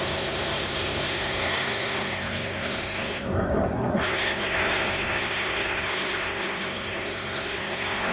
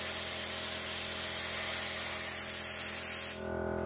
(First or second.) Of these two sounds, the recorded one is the second